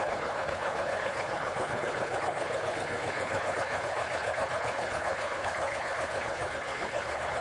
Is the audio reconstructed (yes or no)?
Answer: yes